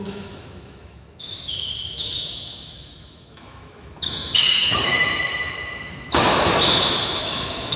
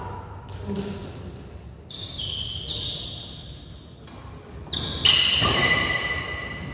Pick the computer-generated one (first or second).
first